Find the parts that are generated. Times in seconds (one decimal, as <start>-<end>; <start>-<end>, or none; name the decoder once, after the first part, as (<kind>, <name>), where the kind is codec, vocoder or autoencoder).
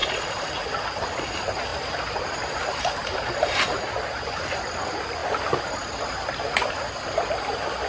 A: 1.7-3.3 (vocoder, BigVGAN v2)